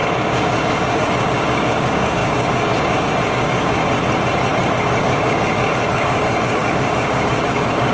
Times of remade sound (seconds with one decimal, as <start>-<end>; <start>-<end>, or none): 0.0-3.8; 4.8-7.9

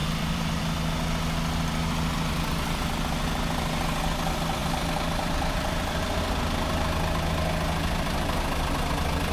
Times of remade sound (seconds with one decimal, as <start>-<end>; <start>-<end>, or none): 0.0-0.6; 4.6-6.2

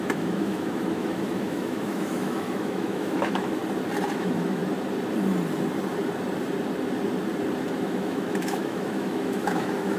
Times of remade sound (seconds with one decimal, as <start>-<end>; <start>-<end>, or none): 0.0-3.6; 4.1-4.6; 7.7-10.0